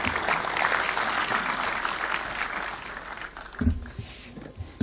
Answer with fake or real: real